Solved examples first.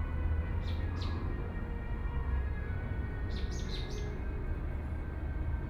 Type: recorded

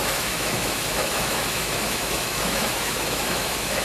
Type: remade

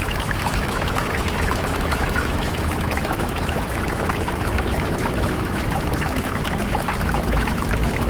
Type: remade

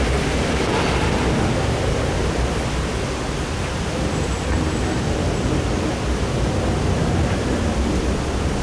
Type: recorded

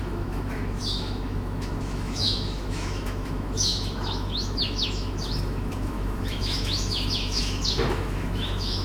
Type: remade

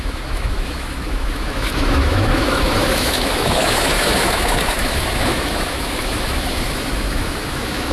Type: remade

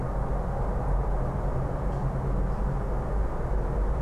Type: recorded